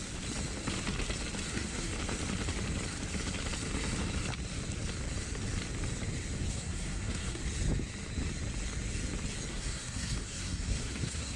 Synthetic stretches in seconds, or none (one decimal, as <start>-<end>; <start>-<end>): 1.5-1.9; 6.5-7.4; 9.5-11.4